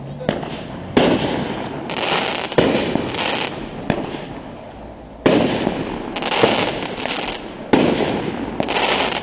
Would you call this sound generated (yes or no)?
no